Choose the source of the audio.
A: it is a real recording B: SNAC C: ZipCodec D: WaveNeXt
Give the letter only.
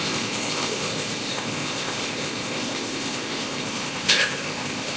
C